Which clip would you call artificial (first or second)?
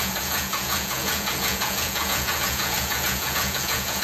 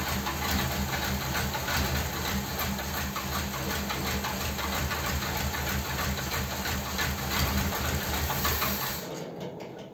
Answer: first